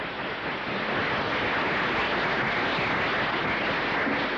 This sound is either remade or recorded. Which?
recorded